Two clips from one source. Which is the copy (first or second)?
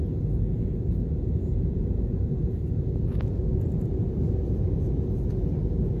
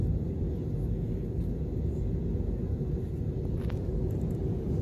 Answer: first